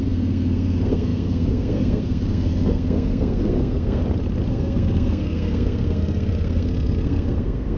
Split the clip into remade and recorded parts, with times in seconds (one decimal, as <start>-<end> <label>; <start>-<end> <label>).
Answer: 0.0-4.0 remade; 4.0-4.5 recorded; 4.5-7.8 remade